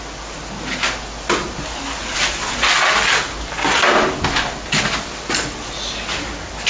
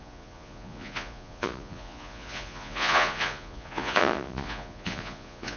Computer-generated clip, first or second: second